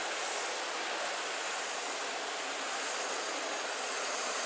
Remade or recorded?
recorded